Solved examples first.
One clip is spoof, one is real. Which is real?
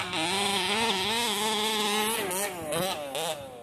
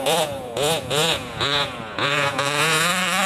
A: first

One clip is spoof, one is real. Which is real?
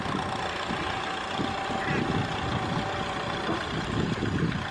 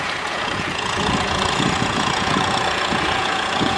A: first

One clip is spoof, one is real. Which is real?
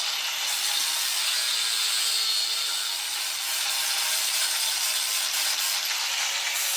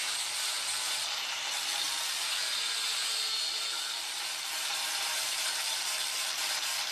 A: first